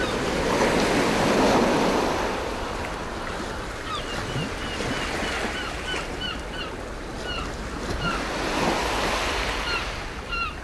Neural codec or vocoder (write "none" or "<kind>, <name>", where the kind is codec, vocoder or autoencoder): none